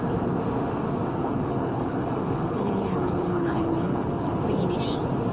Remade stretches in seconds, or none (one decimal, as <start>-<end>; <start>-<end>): 1.2-4.4